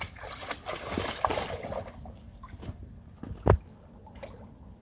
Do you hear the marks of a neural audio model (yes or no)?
no